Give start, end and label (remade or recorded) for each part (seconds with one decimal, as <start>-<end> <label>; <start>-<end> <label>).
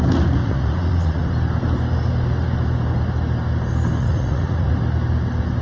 0.0-0.4 recorded; 0.4-1.3 remade; 1.3-4.0 recorded; 4.0-4.7 remade; 4.7-5.6 recorded